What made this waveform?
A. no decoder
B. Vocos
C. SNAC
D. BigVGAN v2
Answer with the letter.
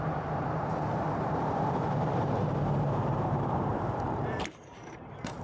D